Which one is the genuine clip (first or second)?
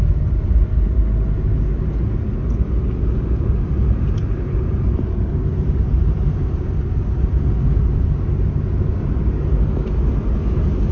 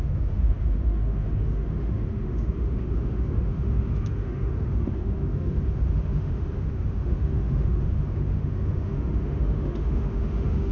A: first